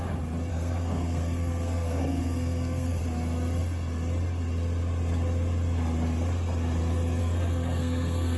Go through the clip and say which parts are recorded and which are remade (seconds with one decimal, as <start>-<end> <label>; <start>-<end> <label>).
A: 0.0-0.5 recorded; 0.5-3.0 remade; 3.0-7.2 recorded; 7.2-8.4 remade